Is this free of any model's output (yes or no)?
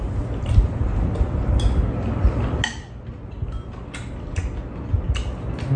yes